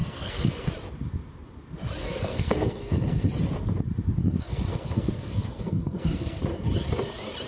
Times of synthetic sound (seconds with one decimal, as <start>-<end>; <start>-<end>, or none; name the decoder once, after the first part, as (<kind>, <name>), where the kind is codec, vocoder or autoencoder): 0.0-0.7 (codec, SNAC); 2.0-3.3; 4.2-6.4